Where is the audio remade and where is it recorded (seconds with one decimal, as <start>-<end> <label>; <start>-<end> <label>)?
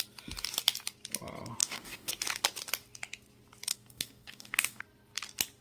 0.0-1.6 recorded; 1.6-2.1 remade; 2.1-3.7 recorded; 3.7-4.8 remade; 4.8-5.6 recorded